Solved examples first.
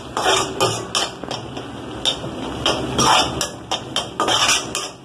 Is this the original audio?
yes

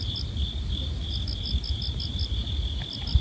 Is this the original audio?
yes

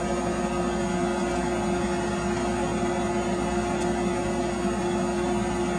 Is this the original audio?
yes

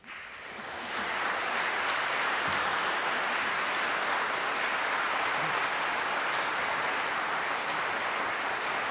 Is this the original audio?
yes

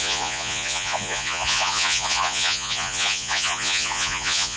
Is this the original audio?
no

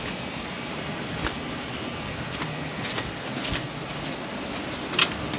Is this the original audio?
yes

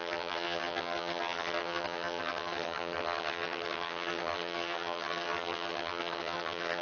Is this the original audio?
no